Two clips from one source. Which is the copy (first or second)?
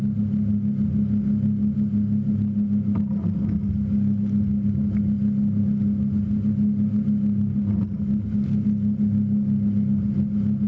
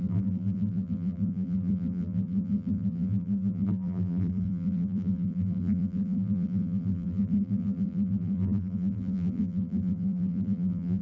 second